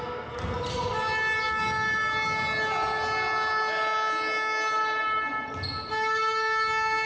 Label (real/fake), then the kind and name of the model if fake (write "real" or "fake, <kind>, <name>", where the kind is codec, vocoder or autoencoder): real